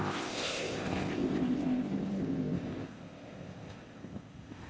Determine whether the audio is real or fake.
fake